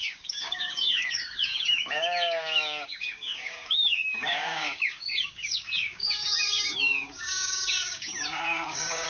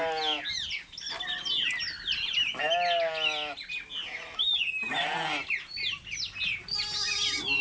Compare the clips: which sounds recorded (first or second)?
second